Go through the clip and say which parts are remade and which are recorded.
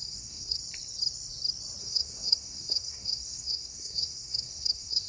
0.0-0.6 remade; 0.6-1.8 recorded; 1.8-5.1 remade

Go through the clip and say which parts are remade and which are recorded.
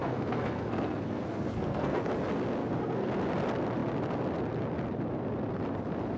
0.0-2.0 remade; 2.0-2.6 recorded; 2.6-3.1 remade; 3.1-6.2 recorded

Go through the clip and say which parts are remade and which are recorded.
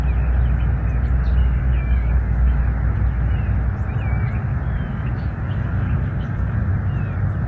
0.0-1.4 recorded; 1.4-2.6 remade; 2.6-4.9 recorded; 4.9-6.6 remade; 6.6-7.5 recorded